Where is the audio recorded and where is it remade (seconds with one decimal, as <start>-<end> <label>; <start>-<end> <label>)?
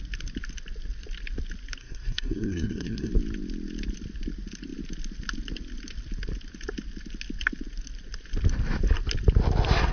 0.0-1.8 recorded; 1.8-3.1 remade; 3.1-9.9 recorded